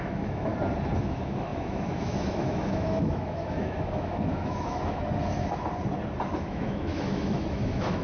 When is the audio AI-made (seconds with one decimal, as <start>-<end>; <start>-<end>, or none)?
0.0-0.5; 1.0-5.0; 6.4-8.0